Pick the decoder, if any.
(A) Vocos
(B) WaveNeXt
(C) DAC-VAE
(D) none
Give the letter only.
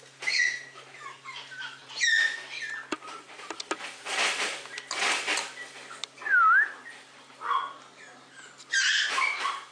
D